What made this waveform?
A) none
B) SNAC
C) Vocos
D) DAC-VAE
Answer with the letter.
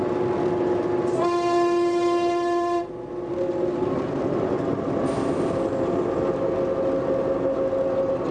A